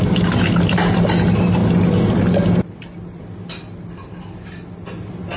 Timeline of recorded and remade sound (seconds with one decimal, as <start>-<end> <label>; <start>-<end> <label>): 0.0-5.4 recorded